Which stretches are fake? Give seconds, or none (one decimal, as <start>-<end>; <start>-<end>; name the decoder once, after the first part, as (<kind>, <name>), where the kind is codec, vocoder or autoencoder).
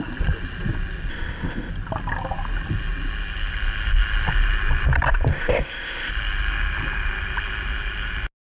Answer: 1.1-1.7 (codec, ZipCodec); 5.3-6.1